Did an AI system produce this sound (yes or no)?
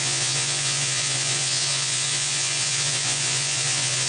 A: yes